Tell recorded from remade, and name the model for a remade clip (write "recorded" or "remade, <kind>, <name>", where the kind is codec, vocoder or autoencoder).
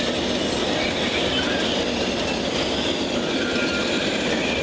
recorded